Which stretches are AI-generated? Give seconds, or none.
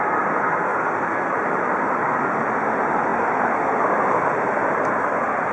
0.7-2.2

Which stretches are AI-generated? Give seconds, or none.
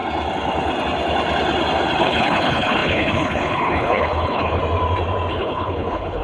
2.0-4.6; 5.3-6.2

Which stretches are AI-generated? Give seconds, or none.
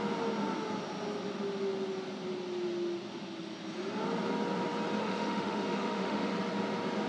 5.0-6.3